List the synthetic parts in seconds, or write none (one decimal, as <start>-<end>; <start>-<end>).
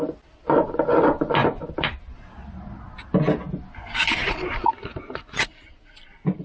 none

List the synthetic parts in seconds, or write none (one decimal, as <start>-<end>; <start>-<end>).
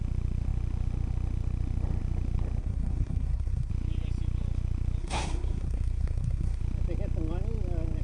2.6-3.7; 5.0-6.6